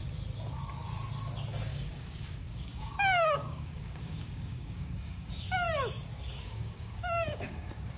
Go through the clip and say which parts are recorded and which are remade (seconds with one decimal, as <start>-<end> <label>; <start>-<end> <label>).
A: 0.0-1.7 recorded; 1.7-5.3 remade; 5.3-6.3 recorded; 6.3-8.0 remade